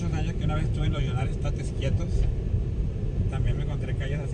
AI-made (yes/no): yes